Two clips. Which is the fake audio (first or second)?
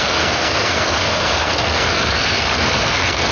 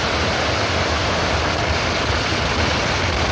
first